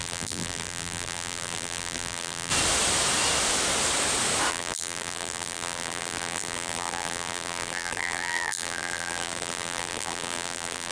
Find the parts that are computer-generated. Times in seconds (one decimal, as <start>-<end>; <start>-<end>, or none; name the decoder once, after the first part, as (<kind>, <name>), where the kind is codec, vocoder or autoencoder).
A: 0.0-2.5 (vocoder, BigVGAN v2); 4.5-10.9

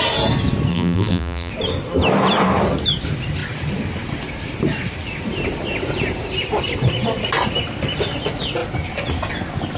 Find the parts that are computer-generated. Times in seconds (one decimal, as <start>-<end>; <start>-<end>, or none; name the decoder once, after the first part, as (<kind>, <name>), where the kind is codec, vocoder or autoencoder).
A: 0.7-1.5 (vocoder, BigVGAN v2)

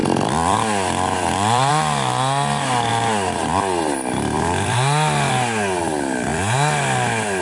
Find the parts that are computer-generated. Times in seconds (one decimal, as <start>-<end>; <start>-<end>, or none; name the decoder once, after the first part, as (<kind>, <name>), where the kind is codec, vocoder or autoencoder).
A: 0.0-1.7 (vocoder, BigVGAN v2); 2.9-5.3; 6.3-7.4

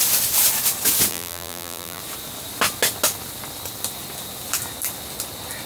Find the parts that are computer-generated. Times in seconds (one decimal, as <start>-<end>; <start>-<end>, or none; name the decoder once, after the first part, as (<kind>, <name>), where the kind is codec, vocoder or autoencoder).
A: 1.1-2.0 (vocoder, BigVGAN v2)

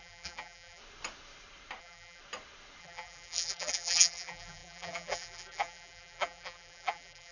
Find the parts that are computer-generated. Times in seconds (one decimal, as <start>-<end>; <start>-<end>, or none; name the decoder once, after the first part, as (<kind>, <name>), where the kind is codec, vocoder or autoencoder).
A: 0.0-0.8 (vocoder, BigVGAN v2); 1.8-2.2; 2.8-7.3